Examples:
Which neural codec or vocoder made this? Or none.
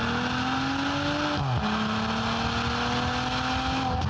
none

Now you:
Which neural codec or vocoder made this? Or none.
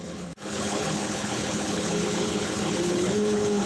codec, HILCodec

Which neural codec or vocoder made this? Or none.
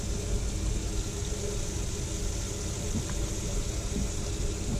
none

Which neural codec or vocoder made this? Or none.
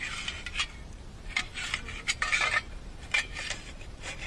vocoder, BigVGAN v2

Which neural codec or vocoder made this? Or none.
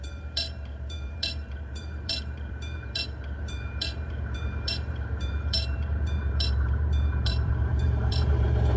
vocoder, BigVGAN v2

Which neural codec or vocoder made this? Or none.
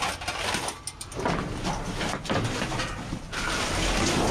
none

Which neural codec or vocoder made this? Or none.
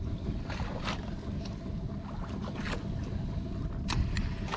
none